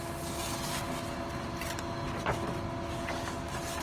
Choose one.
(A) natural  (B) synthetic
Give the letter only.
A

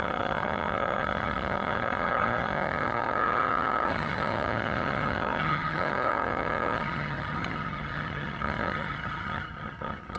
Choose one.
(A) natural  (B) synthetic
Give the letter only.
B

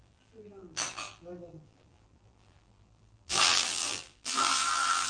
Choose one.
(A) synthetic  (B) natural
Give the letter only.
A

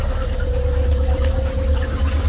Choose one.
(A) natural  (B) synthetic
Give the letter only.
A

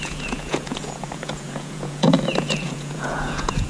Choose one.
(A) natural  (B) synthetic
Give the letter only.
B